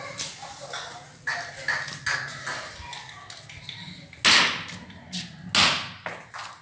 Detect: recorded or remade recorded